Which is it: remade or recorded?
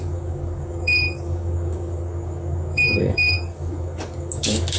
remade